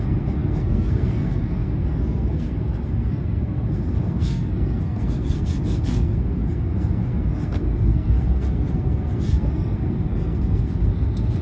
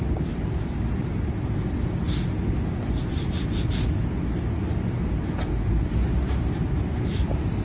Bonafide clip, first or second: second